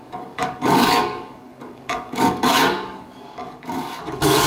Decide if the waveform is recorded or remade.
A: remade